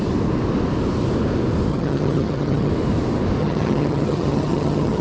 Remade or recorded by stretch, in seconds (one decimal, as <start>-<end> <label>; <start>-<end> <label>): 0.0-1.7 recorded; 1.7-2.7 remade; 2.7-3.4 recorded; 3.4-5.0 remade